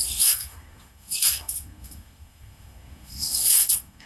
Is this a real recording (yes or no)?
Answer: no